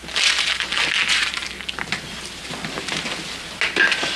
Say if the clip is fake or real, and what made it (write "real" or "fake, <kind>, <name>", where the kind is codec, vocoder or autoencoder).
real